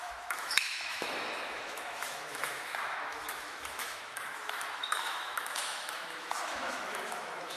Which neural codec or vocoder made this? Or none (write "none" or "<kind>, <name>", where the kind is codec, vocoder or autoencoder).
autoencoder, DAC-VAE